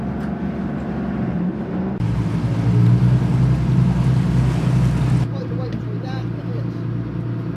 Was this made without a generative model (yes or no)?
yes